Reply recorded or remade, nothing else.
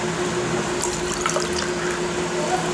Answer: recorded